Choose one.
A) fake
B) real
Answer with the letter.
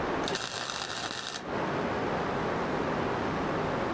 B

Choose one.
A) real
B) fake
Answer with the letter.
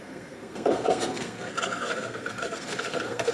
B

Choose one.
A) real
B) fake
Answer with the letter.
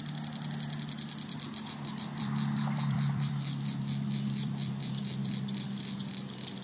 B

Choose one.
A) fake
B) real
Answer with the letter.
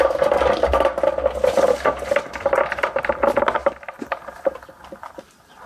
B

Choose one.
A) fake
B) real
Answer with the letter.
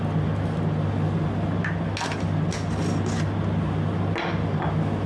B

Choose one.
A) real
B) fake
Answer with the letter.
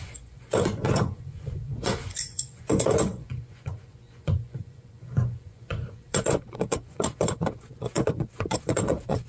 B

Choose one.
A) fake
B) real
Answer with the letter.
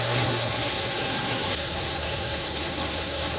A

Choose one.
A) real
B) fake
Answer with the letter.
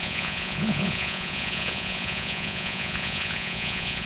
B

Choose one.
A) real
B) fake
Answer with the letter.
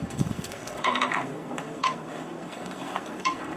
B